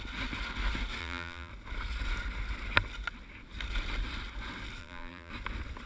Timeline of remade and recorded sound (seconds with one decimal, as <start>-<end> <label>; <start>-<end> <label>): 0.0-1.0 recorded; 1.0-1.5 remade; 1.5-4.8 recorded; 4.8-5.3 remade; 5.3-5.9 recorded